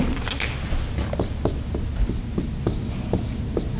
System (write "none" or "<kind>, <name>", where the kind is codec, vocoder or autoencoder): none